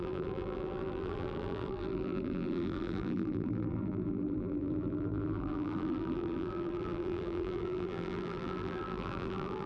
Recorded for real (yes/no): no